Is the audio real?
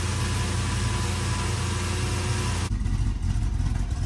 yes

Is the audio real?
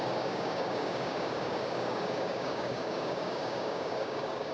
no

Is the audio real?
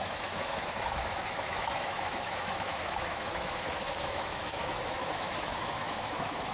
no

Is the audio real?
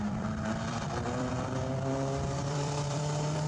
no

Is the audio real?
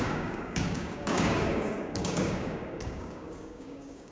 no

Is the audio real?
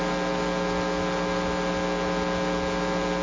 yes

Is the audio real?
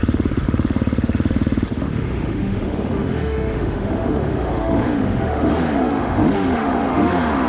no